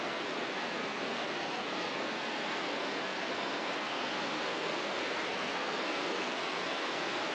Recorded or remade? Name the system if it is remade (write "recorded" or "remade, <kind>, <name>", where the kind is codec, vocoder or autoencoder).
remade, codec, SNAC